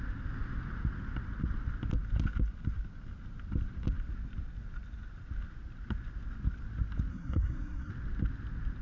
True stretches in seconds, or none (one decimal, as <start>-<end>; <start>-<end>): 0.0-7.1; 7.9-8.8